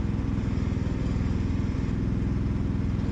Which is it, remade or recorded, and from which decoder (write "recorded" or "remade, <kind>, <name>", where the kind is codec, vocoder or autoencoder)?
recorded